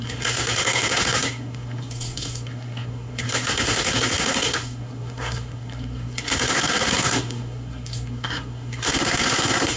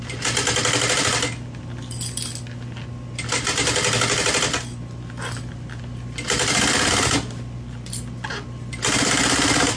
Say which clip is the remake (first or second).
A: first